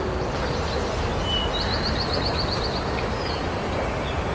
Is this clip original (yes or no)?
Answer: yes